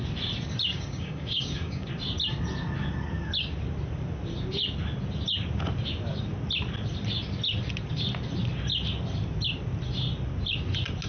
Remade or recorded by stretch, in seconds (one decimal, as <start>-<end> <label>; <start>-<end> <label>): 0.0-0.7 recorded; 0.7-1.9 remade; 1.9-11.1 recorded